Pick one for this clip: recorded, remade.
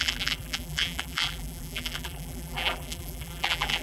remade